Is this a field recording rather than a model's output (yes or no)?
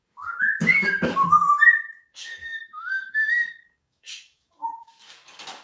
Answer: no